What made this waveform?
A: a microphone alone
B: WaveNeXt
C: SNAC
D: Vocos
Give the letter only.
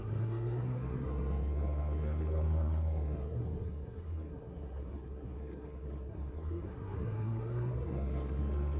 C